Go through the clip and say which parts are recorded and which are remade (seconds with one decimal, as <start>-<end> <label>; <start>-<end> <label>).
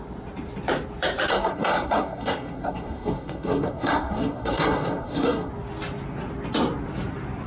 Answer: 0.0-1.3 recorded; 1.3-5.5 remade; 5.5-7.5 recorded